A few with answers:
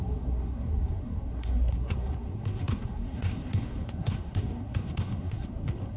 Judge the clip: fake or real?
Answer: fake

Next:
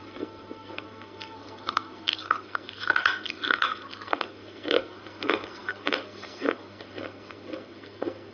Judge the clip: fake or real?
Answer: fake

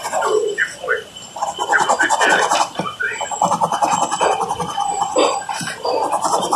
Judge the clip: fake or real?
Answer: real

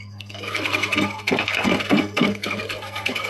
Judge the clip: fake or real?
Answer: fake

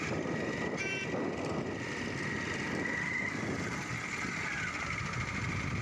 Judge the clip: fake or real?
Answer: real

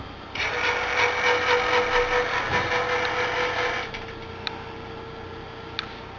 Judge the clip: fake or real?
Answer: real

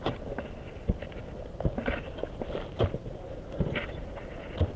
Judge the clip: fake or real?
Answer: real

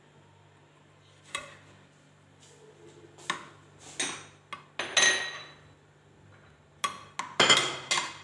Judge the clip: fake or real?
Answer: real